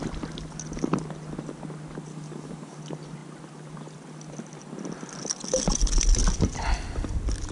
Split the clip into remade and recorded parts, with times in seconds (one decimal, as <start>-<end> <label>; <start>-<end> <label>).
0.0-2.1 recorded; 2.1-2.8 remade; 2.8-7.5 recorded